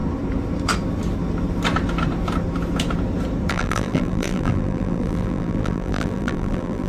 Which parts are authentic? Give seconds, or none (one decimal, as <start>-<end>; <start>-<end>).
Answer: 0.0-3.5